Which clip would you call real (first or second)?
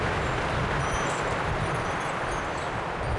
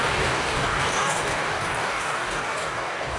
first